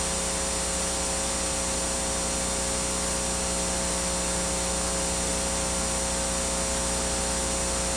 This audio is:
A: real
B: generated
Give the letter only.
A